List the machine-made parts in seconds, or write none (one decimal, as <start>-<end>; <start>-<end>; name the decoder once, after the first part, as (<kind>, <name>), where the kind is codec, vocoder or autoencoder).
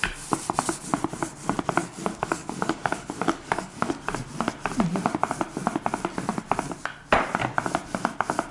1.8-3.9 (codec, DAC)